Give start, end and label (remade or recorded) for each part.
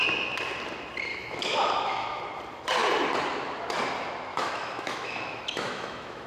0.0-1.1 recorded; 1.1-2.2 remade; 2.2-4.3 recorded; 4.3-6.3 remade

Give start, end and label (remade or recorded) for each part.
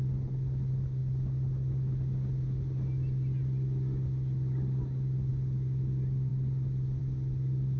0.0-7.8 recorded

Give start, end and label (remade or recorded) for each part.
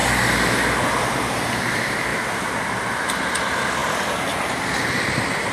0.0-5.5 recorded